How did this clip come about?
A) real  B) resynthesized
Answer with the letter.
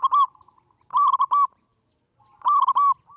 A